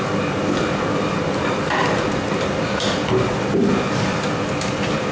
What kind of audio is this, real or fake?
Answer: fake